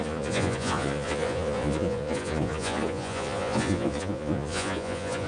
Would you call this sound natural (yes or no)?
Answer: no